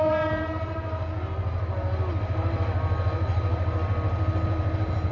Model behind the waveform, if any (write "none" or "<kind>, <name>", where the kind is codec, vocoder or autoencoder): none